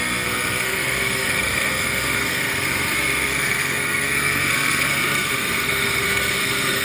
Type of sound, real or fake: fake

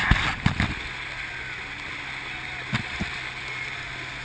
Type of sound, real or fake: real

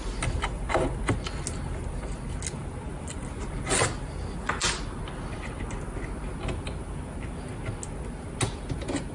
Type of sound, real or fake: real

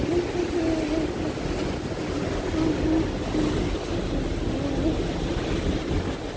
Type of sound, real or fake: real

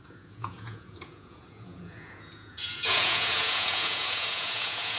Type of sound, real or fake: fake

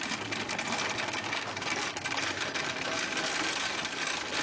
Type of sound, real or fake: real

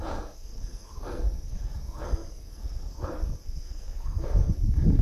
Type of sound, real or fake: fake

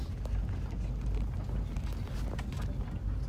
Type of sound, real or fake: real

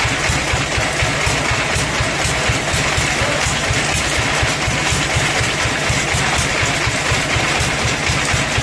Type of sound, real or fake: real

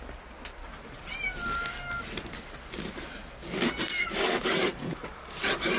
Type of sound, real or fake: real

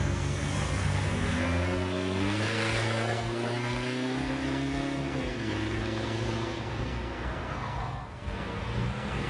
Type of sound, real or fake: fake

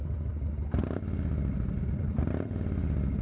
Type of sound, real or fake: real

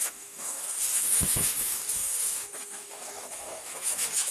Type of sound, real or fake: fake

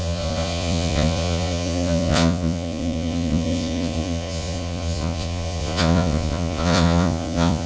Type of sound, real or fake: fake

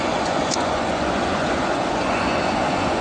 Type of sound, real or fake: fake